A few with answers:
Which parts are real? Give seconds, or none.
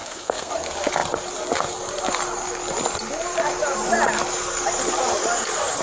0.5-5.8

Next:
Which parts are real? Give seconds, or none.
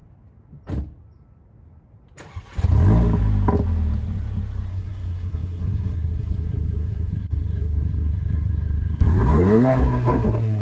0.0-4.7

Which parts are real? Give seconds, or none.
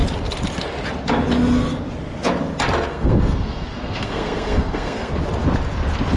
0.0-2.9; 5.1-6.2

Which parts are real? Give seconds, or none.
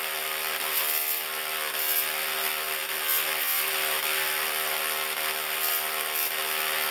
0.0-6.9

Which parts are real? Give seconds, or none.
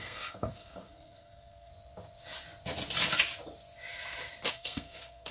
1.7-4.5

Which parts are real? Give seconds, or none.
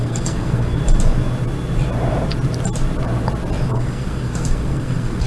0.8-3.7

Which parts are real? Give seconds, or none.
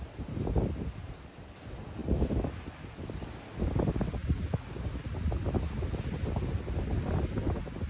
0.0-7.9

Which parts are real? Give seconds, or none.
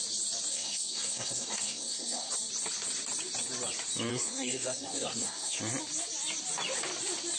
0.0-0.5; 2.3-4.1; 5.6-7.4